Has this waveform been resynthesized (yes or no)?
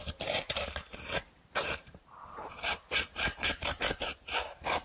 yes